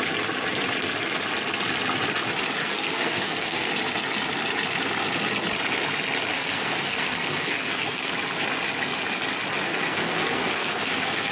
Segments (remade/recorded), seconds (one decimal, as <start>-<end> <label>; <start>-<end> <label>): 0.0-2.6 recorded; 2.6-3.7 remade; 3.7-6.3 recorded; 6.3-8.1 remade; 8.1-9.7 recorded; 9.7-11.3 remade